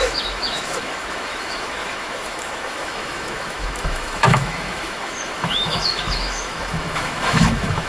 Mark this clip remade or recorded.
remade